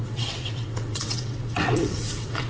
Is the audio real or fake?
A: fake